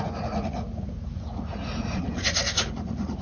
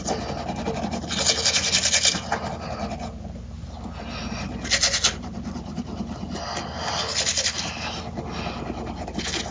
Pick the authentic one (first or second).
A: second